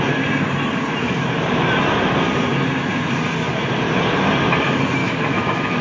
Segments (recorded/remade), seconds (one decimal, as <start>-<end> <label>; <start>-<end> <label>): 0.0-5.0 recorded; 5.0-5.8 remade